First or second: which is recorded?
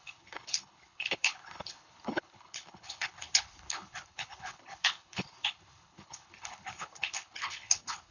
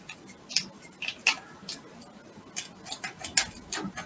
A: second